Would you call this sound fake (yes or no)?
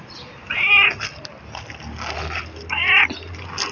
no